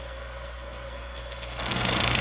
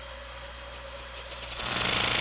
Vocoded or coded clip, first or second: first